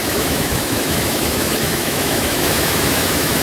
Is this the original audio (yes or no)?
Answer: no